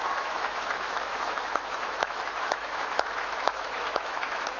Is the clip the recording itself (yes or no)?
no